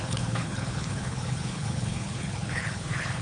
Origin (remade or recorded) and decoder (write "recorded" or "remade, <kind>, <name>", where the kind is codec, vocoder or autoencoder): remade, codec, HILCodec